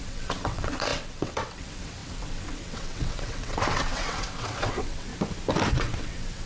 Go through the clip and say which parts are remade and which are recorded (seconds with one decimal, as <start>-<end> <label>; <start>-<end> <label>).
0.0-5.1 remade; 5.1-5.7 recorded; 5.7-6.5 remade